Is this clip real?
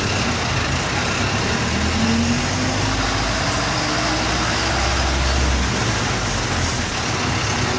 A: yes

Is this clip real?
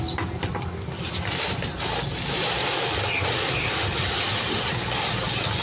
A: yes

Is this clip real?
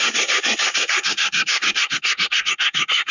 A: no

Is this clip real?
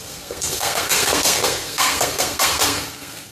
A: no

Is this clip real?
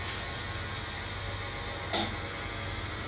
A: yes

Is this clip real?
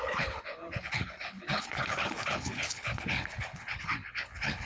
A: no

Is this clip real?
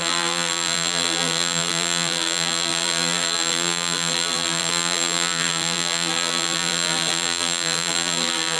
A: no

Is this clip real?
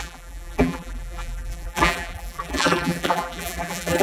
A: no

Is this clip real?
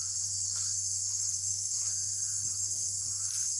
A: no